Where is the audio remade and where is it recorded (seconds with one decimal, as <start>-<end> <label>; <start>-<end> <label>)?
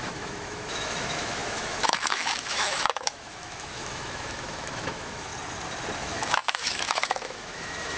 0.0-5.3 remade; 5.3-6.0 recorded; 6.0-8.0 remade